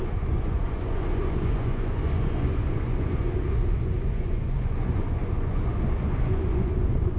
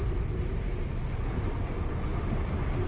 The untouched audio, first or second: second